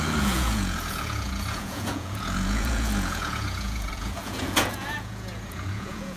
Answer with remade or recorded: remade